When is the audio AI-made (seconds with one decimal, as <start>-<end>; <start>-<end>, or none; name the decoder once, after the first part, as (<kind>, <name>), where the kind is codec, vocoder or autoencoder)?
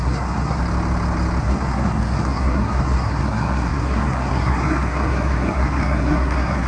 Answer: 0.0-0.6 (codec, SNAC); 1.4-6.7